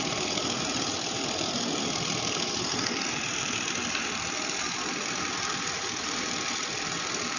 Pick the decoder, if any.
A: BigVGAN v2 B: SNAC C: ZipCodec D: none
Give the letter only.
A